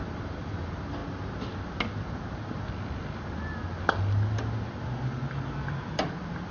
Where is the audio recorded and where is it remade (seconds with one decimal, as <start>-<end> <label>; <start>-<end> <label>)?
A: 0.0-6.5 recorded